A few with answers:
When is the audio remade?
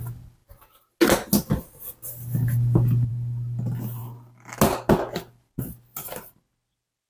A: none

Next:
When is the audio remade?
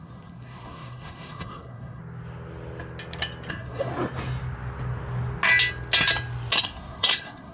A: 0.0-2.0 (codec, SNAC); 3.5-3.9; 6.6-7.5